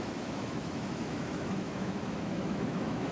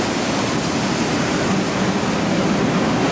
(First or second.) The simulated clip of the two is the first